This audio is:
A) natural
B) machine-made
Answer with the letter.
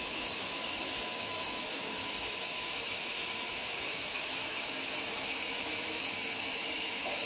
B